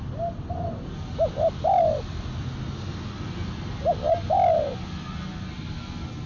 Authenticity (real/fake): real